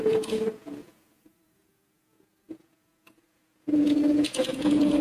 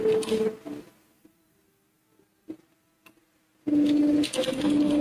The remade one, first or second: first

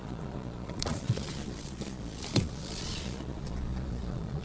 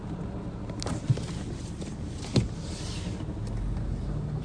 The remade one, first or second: first